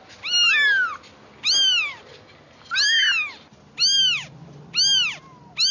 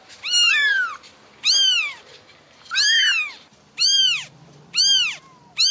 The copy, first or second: second